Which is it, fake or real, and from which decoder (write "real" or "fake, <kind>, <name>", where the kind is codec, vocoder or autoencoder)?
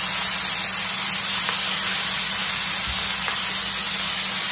real